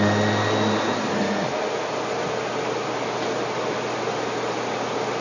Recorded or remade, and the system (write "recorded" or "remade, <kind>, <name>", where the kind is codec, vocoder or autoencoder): recorded